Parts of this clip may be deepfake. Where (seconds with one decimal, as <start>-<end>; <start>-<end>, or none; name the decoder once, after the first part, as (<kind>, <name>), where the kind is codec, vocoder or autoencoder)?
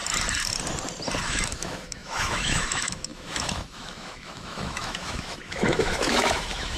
1.2-6.8 (autoencoder, DAC-VAE)